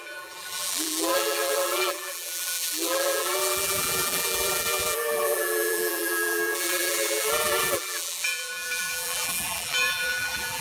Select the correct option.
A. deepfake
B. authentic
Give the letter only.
A